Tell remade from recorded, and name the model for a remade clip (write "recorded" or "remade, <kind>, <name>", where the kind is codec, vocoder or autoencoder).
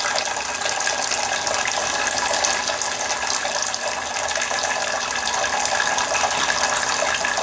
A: recorded